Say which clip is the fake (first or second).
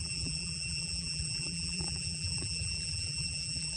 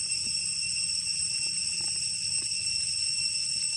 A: first